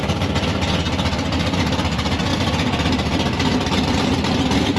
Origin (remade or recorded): recorded